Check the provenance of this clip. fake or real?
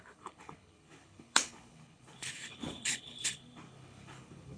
fake